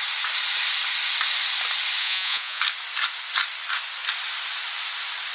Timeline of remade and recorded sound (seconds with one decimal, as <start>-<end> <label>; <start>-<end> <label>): 0.0-2.0 recorded; 2.0-2.6 remade; 2.6-5.3 recorded